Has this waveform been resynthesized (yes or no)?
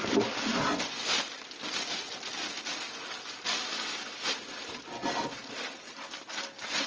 no